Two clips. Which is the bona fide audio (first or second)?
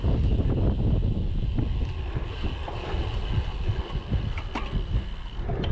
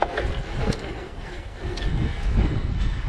first